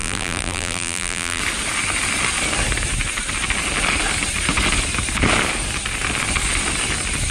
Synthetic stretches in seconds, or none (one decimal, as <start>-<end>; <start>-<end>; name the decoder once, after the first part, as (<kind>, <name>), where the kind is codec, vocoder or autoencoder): 0.0-1.4 (vocoder, BigVGAN v2)